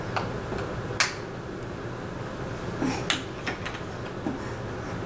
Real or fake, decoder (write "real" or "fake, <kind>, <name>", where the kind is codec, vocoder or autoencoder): real